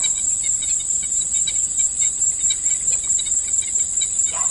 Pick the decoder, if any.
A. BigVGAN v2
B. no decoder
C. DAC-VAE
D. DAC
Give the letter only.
B